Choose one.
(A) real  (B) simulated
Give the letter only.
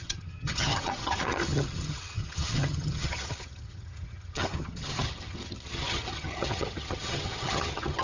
B